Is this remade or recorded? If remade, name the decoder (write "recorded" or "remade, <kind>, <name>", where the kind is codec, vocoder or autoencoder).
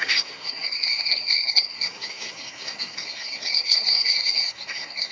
remade, codec, SNAC